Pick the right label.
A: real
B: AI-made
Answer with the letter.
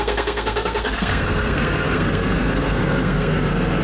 B